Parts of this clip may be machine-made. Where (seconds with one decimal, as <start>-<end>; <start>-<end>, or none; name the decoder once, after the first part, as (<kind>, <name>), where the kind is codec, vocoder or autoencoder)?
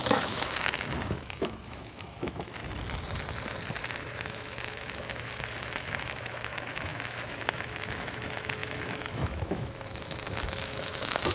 0.0-2.6 (autoencoder, DAC-VAE); 3.8-11.3